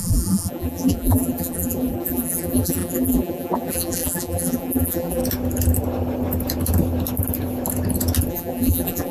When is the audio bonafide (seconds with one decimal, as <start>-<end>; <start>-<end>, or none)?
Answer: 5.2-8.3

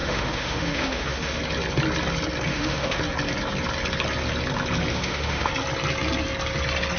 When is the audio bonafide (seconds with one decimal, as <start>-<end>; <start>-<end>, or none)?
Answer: 1.4-2.5; 3.0-4.9; 5.5-7.0

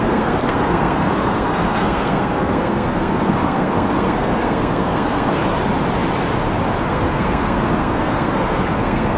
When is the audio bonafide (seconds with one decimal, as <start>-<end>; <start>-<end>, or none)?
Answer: 5.4-6.8

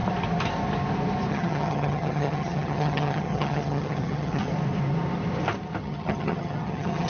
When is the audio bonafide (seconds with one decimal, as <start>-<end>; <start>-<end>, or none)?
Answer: 0.0-1.3; 4.5-5.8

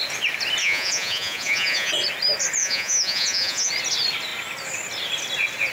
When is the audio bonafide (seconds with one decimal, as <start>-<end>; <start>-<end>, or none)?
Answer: 0.0-0.6; 1.9-2.6; 3.7-5.7

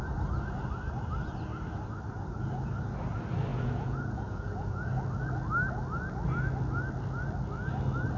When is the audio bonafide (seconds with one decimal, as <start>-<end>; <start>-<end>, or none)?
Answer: 0.0-3.5; 5.0-8.2